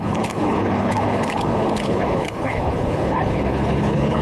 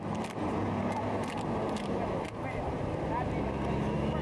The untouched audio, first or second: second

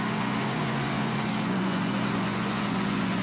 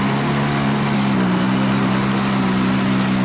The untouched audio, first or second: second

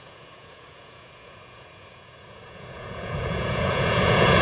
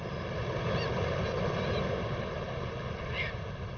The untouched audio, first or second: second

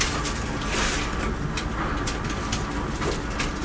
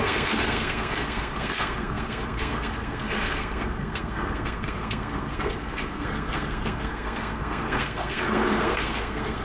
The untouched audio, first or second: first